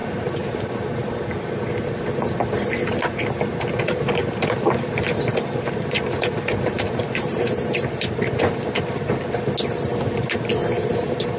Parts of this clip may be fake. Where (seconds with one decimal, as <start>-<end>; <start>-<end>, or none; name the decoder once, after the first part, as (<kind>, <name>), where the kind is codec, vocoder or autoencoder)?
0.0-1.4 (vocoder, BigVGAN v2); 4.2-9.1; 9.9-10.5